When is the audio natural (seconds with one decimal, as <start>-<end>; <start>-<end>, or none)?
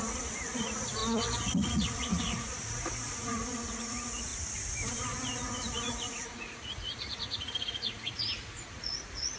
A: 1.0-1.5